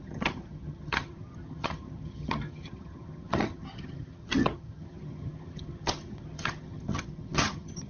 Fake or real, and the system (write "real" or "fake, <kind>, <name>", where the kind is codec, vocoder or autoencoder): fake, vocoder, HiFi-GAN